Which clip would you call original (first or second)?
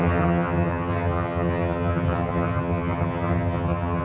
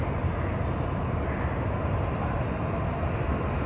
second